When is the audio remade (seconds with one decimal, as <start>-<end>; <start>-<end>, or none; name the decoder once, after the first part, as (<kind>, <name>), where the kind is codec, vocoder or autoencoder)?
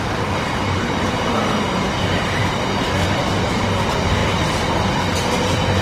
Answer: 0.0-1.4 (vocoder, BigVGAN v2); 2.0-5.8